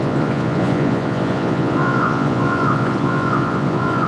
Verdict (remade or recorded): remade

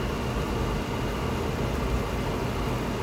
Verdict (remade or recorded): recorded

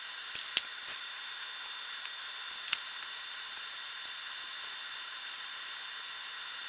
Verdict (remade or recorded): recorded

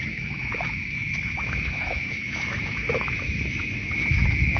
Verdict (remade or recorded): remade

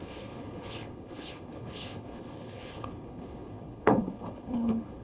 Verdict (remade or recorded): remade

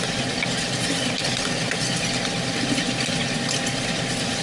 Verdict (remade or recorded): recorded